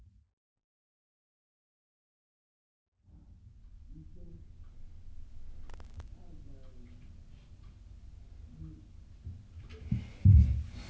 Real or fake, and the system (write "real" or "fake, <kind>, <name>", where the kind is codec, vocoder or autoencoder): real